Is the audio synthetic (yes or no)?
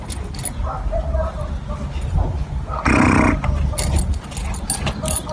no